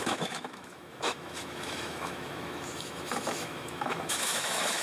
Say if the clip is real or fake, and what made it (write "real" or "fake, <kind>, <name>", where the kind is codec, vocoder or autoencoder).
fake, autoencoder, DAC-VAE